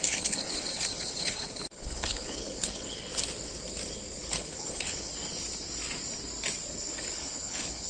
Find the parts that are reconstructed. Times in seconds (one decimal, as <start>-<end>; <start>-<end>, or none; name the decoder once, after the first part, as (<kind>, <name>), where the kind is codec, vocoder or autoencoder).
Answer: 0.0-3.1 (codec, HILCodec); 4.2-5.1; 6.7-7.9